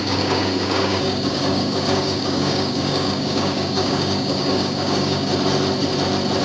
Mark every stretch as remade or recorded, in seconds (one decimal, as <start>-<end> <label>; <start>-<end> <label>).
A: 0.0-5.3 remade; 5.3-6.4 recorded